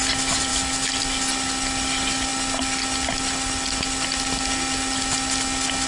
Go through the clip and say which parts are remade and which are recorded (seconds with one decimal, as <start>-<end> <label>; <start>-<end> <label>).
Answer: 0.0-5.9 recorded